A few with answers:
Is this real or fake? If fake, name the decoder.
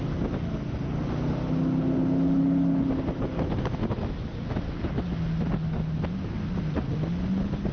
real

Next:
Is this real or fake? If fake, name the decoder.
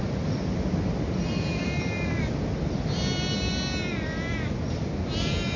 real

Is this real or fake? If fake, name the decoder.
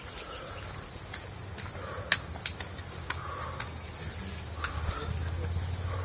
real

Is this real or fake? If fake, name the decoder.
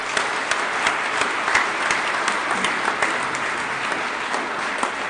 real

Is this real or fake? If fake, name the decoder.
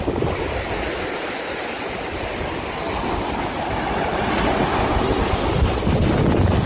real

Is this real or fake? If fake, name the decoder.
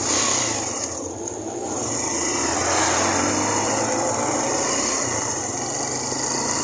real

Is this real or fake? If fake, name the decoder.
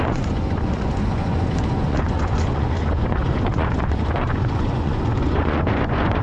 fake, vocoder, Vocos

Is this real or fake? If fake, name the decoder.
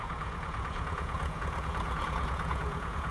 fake, vocoder, Vocos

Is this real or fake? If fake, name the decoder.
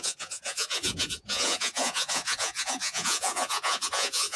fake, vocoder, Vocos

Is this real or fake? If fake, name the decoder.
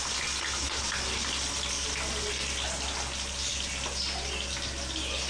real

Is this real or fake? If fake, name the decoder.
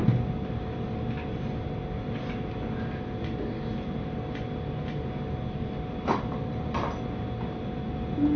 real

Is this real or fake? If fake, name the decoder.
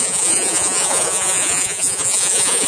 fake, vocoder, Vocos